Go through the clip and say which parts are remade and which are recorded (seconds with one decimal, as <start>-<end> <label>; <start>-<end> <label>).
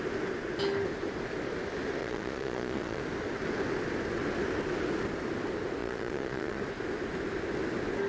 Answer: 0.0-2.0 recorded; 2.0-3.0 remade; 3.0-5.8 recorded; 5.8-6.6 remade; 6.6-8.1 recorded